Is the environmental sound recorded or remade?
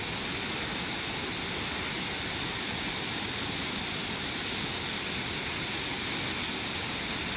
recorded